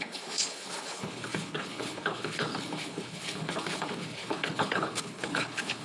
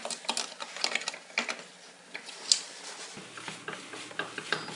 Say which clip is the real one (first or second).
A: second